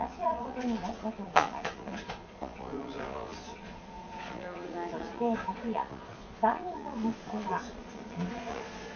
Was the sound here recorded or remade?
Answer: remade